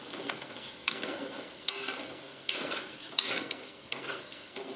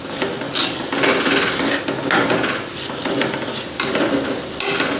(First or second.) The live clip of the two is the second